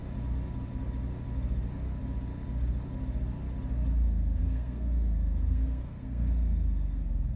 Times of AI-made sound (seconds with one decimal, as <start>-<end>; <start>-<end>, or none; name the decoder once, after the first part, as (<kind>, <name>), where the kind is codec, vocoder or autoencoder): 4.4-7.0 (codec, SNAC)